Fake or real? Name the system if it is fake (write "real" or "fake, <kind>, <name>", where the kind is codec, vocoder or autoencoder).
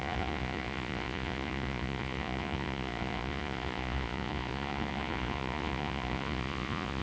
fake, vocoder, Vocos